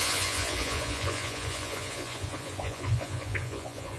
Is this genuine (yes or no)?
no